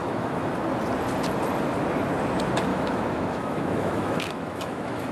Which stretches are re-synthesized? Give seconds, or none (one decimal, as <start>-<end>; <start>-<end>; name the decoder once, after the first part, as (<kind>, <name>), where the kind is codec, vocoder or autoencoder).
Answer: 0.0-0.5 (autoencoder, DAC-VAE); 2.7-5.1